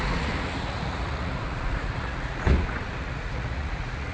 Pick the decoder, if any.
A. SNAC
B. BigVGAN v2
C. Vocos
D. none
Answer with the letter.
C